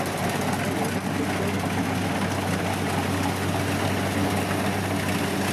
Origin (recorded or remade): recorded